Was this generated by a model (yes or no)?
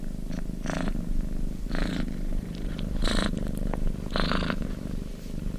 yes